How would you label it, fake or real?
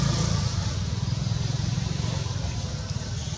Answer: real